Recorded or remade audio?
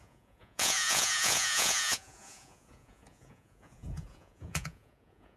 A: remade